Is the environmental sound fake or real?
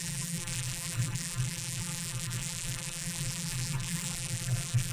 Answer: fake